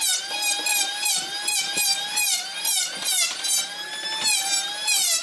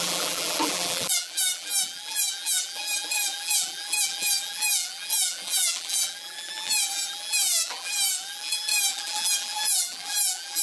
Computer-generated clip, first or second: second